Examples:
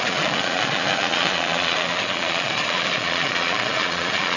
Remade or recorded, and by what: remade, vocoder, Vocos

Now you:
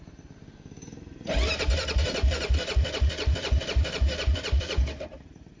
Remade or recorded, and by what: remade, vocoder, BigVGAN v2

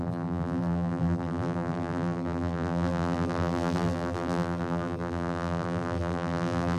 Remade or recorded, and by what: remade, vocoder, BigVGAN v2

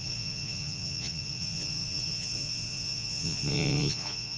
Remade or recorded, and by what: remade, vocoder, Vocos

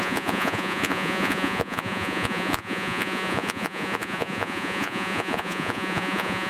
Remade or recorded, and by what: remade, vocoder, Vocos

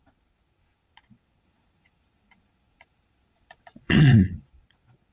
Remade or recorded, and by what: remade, vocoder, Vocos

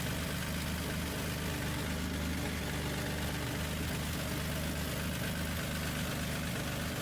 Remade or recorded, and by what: recorded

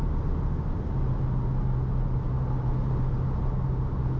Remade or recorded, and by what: recorded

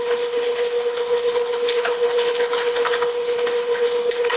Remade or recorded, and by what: remade, codec, HILCodec